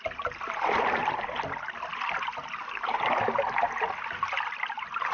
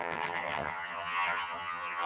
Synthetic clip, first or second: second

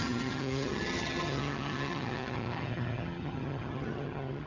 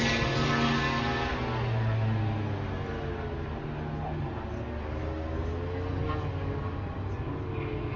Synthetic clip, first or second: first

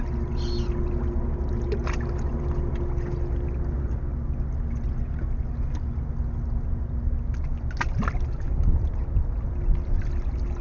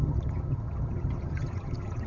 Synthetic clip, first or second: second